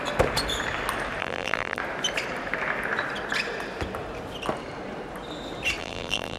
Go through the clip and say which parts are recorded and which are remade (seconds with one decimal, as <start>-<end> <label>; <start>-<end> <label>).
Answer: 0.0-1.2 recorded; 1.2-1.8 remade; 1.8-5.8 recorded; 5.8-6.4 remade